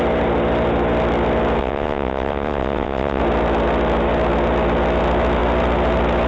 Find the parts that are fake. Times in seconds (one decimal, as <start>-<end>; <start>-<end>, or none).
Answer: 1.6-3.2